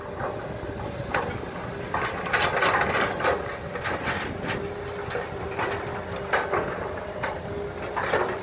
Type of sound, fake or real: real